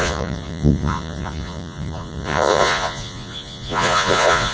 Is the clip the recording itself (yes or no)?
no